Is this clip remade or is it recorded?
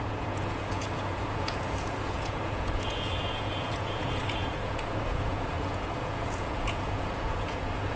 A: remade